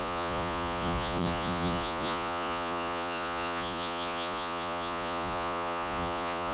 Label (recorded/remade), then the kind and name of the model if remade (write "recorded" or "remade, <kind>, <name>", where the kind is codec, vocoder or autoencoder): remade, vocoder, Vocos